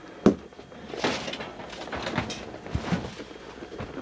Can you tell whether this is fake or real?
real